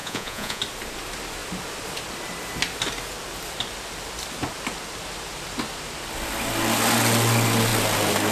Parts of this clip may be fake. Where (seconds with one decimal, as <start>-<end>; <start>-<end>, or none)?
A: 0.0-0.6